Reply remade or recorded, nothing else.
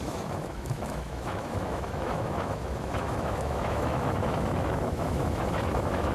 remade